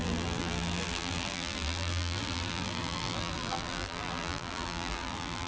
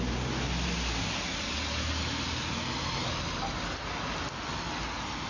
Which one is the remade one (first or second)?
first